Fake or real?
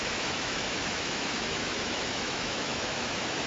fake